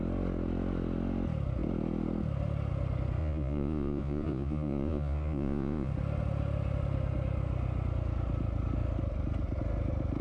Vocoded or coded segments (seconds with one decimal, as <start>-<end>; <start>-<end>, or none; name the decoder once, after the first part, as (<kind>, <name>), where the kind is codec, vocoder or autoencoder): 3.2-5.9 (vocoder, Vocos)